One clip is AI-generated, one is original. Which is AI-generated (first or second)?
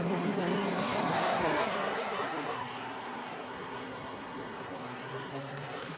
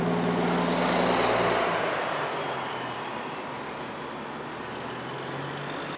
first